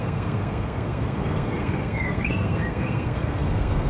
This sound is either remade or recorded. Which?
remade